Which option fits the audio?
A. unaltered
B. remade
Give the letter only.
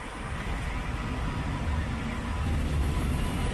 A